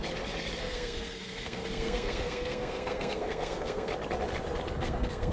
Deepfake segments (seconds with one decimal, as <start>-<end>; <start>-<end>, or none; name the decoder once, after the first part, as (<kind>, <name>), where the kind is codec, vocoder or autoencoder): 0.6-3.9 (codec, SNAC); 4.8-5.3